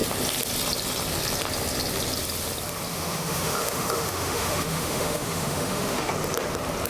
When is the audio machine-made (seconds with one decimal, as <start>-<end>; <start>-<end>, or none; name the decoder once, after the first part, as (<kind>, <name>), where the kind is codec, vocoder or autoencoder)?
2.9-6.1 (autoencoder, DAC-VAE)